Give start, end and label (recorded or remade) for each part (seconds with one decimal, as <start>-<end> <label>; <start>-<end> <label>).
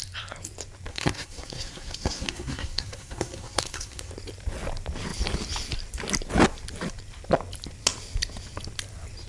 0.0-0.9 recorded; 0.9-4.1 remade; 4.1-9.3 recorded